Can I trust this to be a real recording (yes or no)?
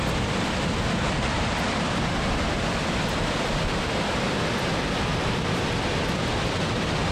yes